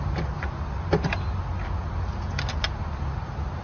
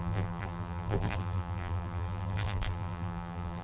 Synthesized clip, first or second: second